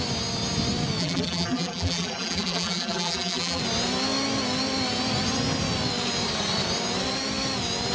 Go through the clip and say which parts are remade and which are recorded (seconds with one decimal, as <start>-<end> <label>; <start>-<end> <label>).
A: 0.0-1.0 recorded; 1.0-3.6 remade; 3.6-7.9 recorded